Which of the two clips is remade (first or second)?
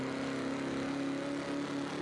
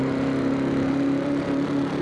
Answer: second